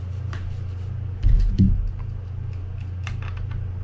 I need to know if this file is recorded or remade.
recorded